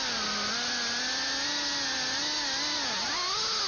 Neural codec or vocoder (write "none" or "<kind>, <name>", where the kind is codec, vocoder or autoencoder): none